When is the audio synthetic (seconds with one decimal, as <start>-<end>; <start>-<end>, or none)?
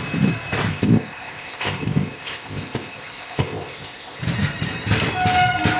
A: 0.7-4.2